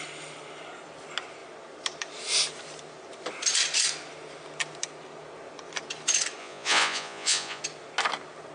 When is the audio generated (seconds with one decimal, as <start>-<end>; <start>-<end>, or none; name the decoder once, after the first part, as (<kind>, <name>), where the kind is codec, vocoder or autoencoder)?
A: 6.4-7.6 (vocoder, Vocos)